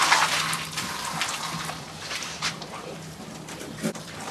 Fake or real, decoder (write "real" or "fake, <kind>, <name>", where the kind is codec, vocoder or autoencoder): fake, vocoder, BigVGAN v2